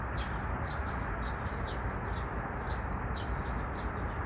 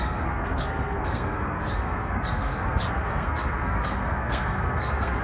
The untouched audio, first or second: first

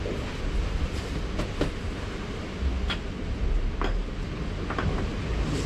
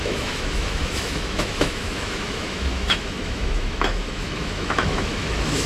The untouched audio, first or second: first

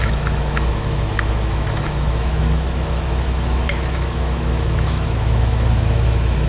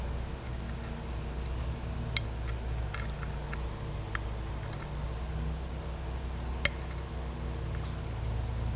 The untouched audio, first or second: second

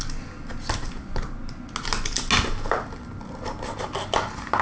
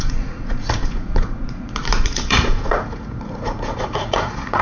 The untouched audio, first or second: first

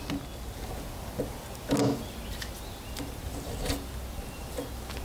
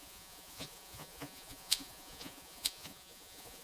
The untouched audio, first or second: first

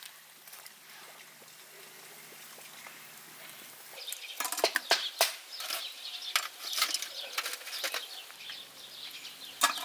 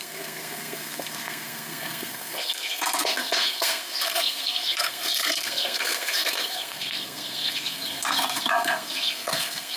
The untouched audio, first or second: first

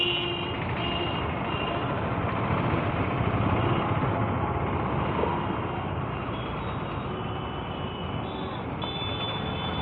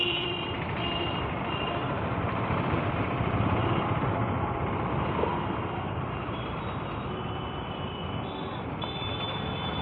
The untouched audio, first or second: first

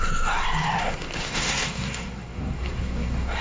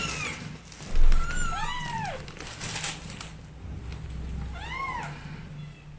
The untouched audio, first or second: second